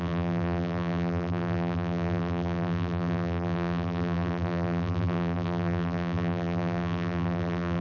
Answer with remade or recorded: remade